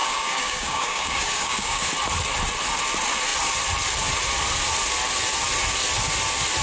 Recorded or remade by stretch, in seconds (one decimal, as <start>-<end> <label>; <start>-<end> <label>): 0.0-1.9 remade; 1.9-6.6 recorded